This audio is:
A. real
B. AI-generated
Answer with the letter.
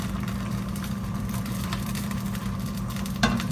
B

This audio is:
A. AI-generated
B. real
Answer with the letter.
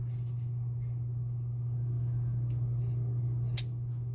B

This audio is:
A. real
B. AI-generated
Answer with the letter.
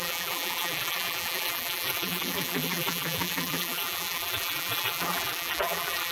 B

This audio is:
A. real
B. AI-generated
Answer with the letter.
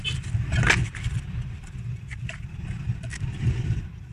B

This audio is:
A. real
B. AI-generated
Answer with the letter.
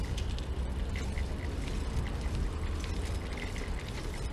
A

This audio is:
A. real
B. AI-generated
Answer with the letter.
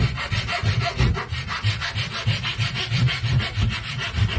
A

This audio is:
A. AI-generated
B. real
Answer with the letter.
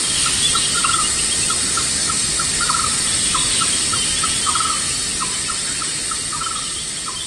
B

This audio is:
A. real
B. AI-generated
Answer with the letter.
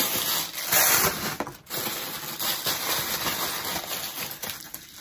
A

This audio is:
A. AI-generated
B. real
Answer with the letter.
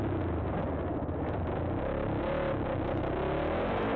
B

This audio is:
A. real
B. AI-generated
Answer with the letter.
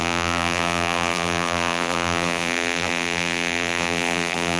B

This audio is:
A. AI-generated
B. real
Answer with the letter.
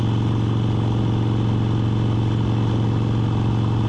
B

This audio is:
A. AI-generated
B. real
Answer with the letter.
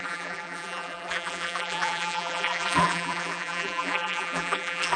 A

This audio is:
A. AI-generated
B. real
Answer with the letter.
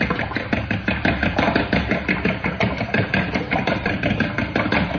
A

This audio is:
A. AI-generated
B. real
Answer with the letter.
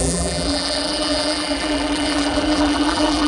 A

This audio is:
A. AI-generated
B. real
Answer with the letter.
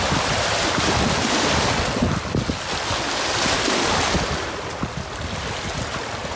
B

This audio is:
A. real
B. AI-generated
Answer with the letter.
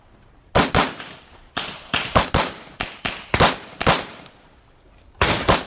A